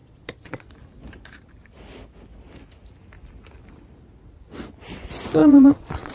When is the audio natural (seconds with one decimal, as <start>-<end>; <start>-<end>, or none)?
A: 0.7-5.4